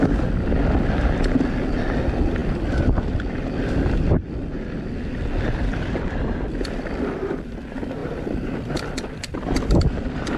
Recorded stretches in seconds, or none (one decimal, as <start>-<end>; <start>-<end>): 0.0-10.4